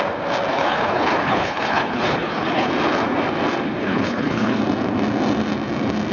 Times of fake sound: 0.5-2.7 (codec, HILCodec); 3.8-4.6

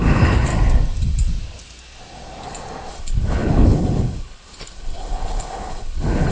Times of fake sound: 0.0-0.5 (codec, HILCodec); 2.9-6.3

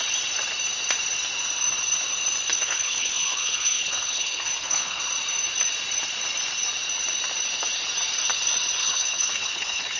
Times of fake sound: 2.5-5.0 (codec, HILCodec); 8.8-10.0

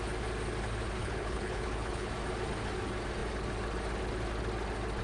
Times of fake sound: 1.0-2.1 (codec, HILCodec)

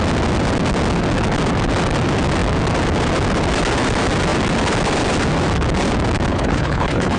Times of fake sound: 6.3-7.2 (codec, HILCodec)

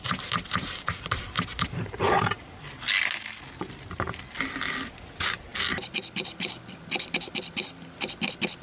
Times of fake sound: none